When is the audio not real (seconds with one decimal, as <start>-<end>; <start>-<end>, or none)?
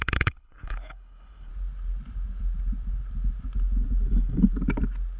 0.0-1.5; 4.1-4.5